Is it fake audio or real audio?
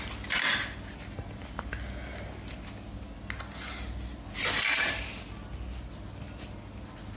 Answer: real